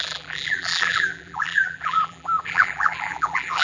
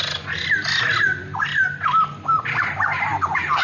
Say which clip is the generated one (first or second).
first